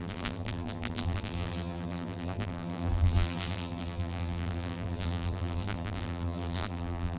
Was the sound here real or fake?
fake